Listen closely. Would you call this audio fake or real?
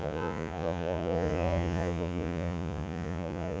fake